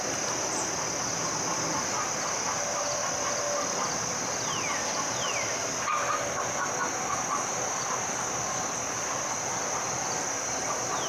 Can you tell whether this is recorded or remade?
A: recorded